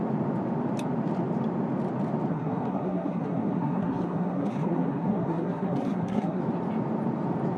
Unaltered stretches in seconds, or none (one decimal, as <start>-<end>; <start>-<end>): 0.0-2.3; 6.4-7.6